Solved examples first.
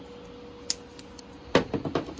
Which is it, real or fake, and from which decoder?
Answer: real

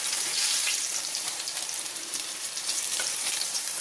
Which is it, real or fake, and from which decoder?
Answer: fake, vocoder, BigVGAN v2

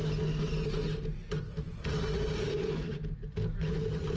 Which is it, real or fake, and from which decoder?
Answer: real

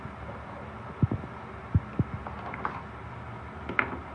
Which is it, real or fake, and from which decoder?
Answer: real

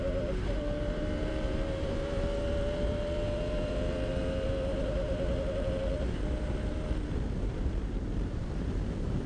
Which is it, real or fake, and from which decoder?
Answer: fake, vocoder, BigVGAN v2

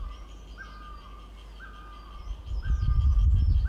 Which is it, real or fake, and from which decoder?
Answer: real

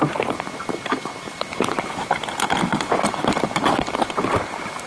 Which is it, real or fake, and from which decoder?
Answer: real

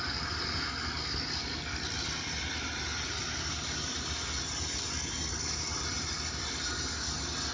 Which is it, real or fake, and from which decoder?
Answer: real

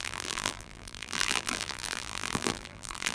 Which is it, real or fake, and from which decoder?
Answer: fake, vocoder, BigVGAN v2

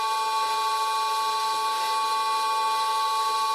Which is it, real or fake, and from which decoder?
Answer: real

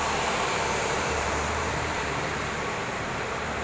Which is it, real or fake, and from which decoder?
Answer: fake, vocoder, BigVGAN v2